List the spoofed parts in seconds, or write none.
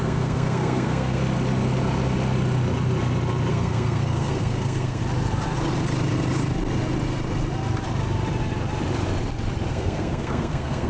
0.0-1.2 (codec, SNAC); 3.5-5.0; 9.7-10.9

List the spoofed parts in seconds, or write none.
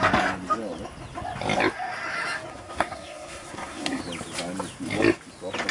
2.5-4.0 (codec, SNAC)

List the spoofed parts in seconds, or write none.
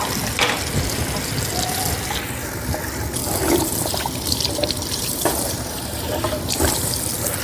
3.2-6.9 (vocoder, BigVGAN v2)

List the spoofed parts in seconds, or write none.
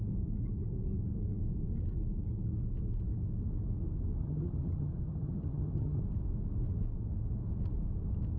4.2-6.0 (vocoder, HiFi-GAN)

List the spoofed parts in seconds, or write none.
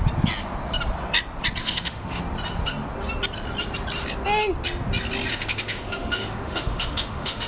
1.6-2.2 (autoencoder, DAC-VAE); 5.3-7.5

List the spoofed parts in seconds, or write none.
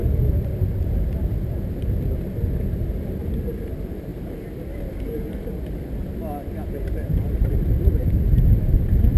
none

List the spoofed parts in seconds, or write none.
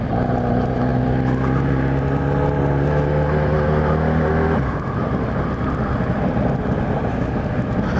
none